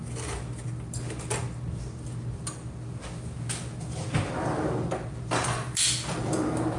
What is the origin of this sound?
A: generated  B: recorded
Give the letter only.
B